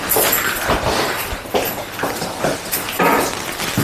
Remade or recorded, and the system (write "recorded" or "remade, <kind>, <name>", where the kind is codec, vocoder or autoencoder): recorded